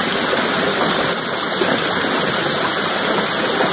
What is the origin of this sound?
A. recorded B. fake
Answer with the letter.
A